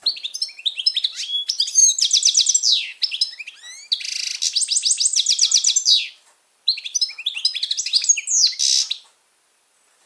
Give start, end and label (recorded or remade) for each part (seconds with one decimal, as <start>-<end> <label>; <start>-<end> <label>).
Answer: 0.0-10.1 recorded